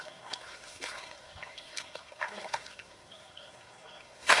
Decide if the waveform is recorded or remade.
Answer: remade